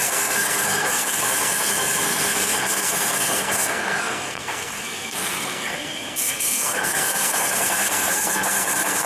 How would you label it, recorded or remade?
remade